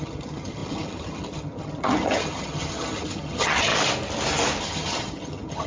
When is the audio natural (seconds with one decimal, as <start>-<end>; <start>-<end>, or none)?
3.7-4.6